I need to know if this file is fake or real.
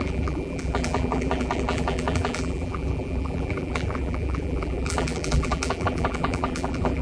fake